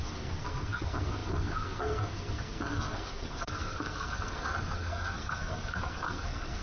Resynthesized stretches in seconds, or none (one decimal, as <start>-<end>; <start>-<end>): 0.0-6.6